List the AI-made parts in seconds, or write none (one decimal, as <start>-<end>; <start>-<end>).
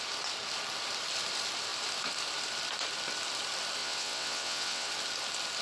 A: 3.8-4.9